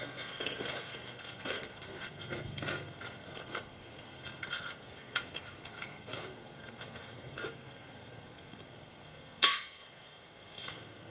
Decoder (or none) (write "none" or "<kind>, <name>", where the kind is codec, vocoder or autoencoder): codec, SNAC